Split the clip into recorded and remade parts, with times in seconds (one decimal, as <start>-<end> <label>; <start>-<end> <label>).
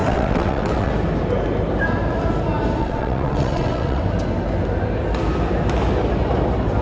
0.0-0.9 remade; 0.9-2.8 recorded; 2.8-4.0 remade; 4.0-6.8 recorded